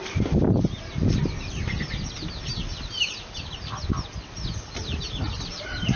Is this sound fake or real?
real